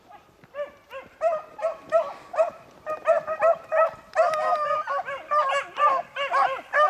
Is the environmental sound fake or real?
real